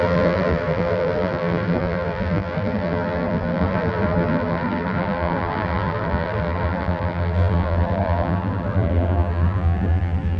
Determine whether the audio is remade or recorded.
remade